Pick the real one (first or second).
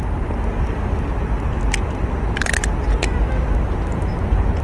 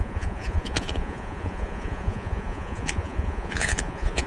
first